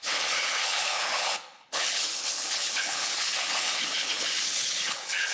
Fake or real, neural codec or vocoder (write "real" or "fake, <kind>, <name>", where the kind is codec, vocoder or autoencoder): fake, codec, HILCodec